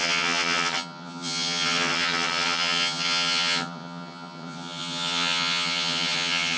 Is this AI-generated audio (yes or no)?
yes